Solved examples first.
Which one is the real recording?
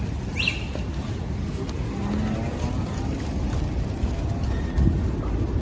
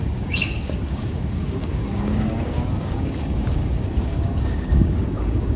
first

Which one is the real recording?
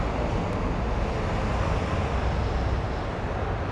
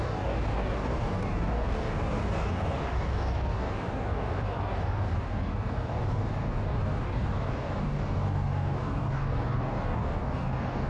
first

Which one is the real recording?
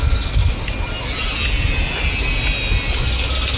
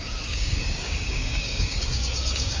first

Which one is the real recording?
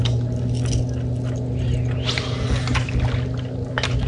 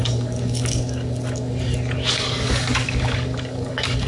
first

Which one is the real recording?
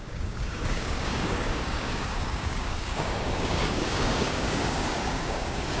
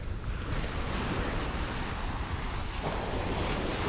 second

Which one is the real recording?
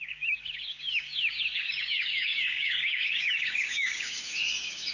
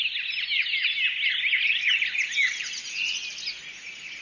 second